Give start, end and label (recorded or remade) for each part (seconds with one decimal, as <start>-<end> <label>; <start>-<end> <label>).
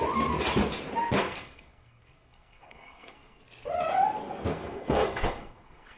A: 0.0-1.0 recorded; 1.0-3.4 remade; 3.4-4.5 recorded; 4.5-6.0 remade